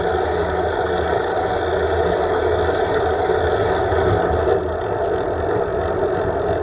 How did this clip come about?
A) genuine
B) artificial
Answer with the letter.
A